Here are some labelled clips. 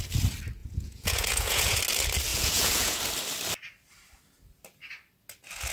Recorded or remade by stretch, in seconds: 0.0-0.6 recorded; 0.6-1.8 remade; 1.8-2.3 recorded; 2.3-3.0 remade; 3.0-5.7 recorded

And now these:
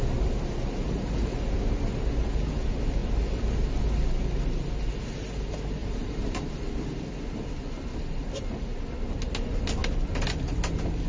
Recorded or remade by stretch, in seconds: 0.0-5.8 recorded; 5.8-6.5 remade; 6.5-11.1 recorded